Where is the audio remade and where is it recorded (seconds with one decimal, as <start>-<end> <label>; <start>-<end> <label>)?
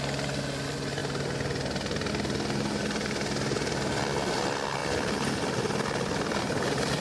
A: 0.0-7.0 recorded